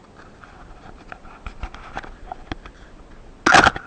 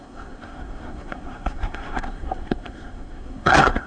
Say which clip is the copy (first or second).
second